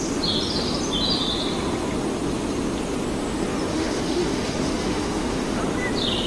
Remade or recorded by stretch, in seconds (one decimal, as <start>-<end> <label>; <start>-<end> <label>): 0.0-3.7 recorded; 3.7-5.6 remade; 5.6-6.3 recorded